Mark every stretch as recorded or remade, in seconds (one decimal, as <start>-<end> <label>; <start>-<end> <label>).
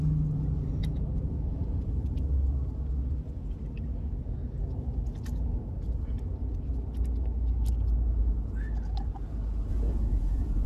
0.0-0.8 recorded; 0.8-1.9 remade; 1.9-9.7 recorded; 9.7-10.7 remade